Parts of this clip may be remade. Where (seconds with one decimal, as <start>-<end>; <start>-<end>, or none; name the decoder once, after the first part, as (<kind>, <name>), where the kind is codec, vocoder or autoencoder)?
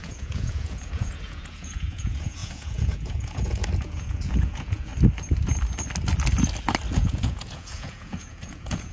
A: 0.0-4.9 (vocoder, Vocos); 6.9-8.9